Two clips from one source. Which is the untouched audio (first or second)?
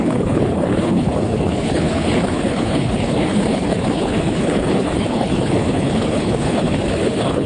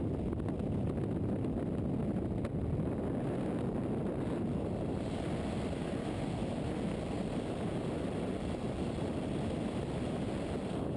second